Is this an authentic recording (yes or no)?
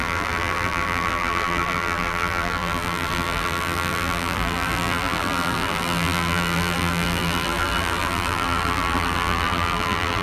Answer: no